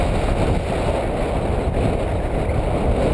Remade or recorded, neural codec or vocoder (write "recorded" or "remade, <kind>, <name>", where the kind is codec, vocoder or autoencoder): recorded